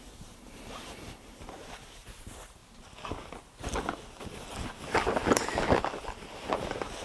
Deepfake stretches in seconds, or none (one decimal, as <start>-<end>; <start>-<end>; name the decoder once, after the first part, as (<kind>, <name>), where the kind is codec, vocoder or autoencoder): 0.0-2.6 (vocoder, BigVGAN v2)